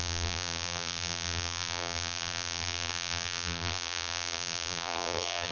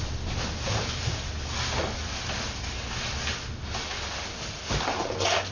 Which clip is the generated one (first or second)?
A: first